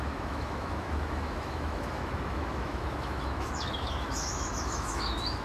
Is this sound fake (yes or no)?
yes